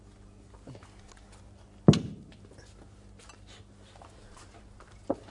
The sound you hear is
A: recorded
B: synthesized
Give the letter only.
A